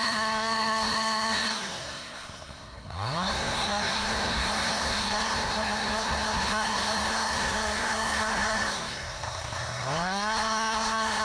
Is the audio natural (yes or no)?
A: no